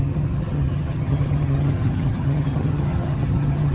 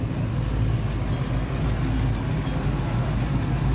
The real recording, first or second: second